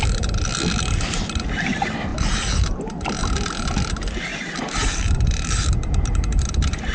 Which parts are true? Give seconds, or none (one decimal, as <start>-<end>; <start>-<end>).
0.0-2.1; 2.8-4.3; 6.4-6.9